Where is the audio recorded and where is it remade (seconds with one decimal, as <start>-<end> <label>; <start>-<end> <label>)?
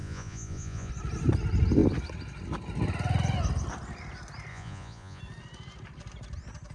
0.0-0.9 remade; 0.9-4.5 recorded; 4.5-5.2 remade; 5.2-6.7 recorded